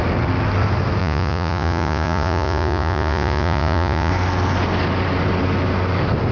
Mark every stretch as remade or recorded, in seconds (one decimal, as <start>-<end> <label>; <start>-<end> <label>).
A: 0.0-1.0 recorded; 1.0-4.1 remade; 4.1-6.3 recorded